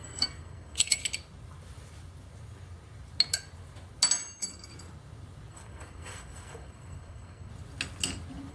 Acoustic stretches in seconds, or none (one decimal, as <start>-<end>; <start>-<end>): 1.0-5.5; 7.5-8.5